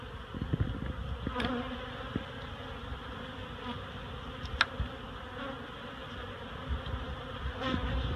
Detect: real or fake real